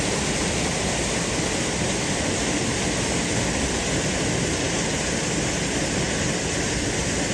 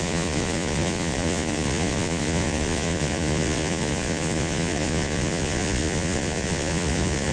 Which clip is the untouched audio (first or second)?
first